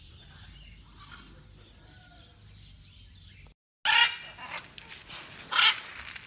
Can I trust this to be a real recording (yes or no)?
yes